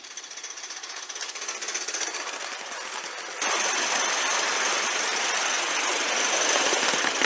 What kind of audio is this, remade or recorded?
recorded